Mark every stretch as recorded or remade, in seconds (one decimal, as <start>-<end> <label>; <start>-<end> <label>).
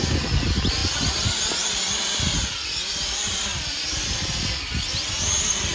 0.0-5.7 recorded